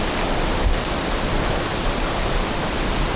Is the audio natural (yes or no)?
no